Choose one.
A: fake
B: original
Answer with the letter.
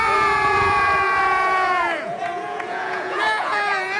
A